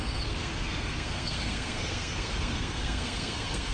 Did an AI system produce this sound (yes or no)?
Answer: yes